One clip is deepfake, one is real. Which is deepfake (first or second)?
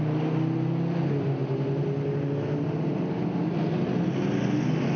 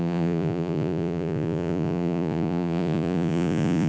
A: second